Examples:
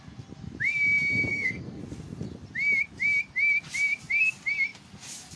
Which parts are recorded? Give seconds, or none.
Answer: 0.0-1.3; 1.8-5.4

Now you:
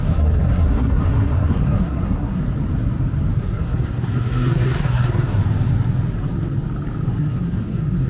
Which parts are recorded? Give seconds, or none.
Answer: 2.4-3.4; 5.4-7.2

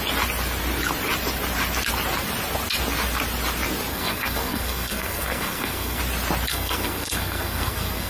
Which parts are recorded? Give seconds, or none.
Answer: 0.0-3.9; 6.0-6.5

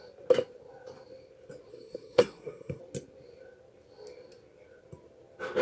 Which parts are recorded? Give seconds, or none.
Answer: 0.0-1.7; 2.8-5.6